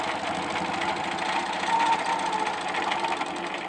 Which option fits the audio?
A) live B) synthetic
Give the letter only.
A